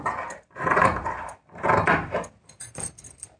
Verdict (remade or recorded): remade